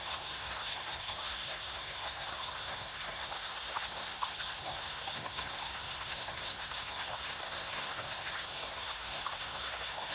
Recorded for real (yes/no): no